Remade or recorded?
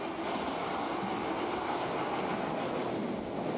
recorded